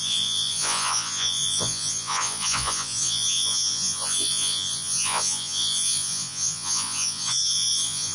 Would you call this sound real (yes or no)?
no